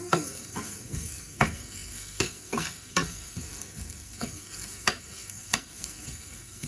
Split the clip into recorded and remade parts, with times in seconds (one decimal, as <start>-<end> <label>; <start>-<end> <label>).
0.0-6.7 remade